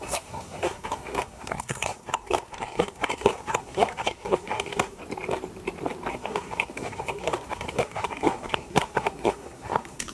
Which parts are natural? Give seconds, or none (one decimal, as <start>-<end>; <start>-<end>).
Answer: 5.0-6.1